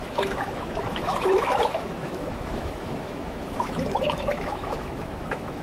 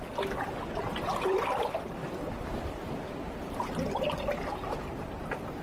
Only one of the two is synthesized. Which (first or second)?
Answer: first